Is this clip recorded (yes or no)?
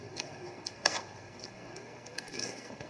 no